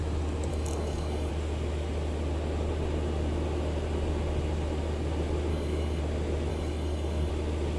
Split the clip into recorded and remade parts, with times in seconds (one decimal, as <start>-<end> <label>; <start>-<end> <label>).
0.0-0.5 recorded; 0.5-1.3 remade; 1.3-5.5 recorded; 5.5-6.0 remade; 6.0-6.5 recorded; 6.5-7.3 remade; 7.3-7.8 recorded